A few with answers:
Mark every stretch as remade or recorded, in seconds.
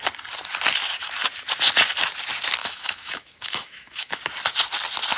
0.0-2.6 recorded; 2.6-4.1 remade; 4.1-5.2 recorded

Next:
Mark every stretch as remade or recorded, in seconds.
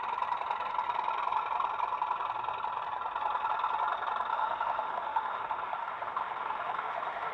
0.0-4.3 recorded; 4.3-7.3 remade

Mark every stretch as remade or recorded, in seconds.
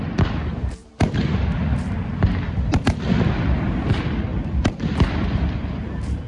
0.0-0.8 recorded; 0.8-3.9 remade; 3.9-4.3 recorded; 4.3-6.3 remade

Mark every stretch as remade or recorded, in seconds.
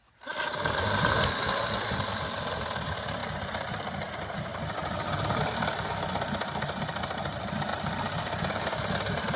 0.0-7.7 remade; 7.7-8.2 recorded; 8.2-9.4 remade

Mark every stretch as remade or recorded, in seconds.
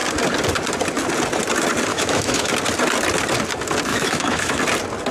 0.0-1.9 recorded; 1.9-2.5 remade; 2.5-3.9 recorded; 3.9-4.6 remade; 4.6-5.1 recorded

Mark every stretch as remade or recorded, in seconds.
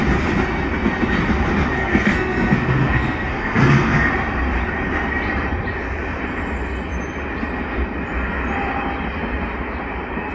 0.0-1.8 recorded; 1.8-4.1 remade; 4.1-10.3 recorded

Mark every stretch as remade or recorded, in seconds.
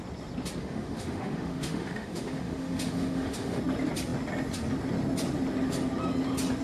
0.0-0.6 recorded; 0.6-3.6 remade; 3.6-6.6 recorded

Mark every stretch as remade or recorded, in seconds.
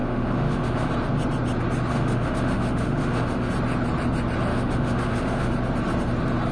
0.0-0.9 remade; 0.9-1.9 recorded; 1.9-3.5 remade; 3.5-4.5 recorded; 4.5-5.5 remade; 5.5-6.5 recorded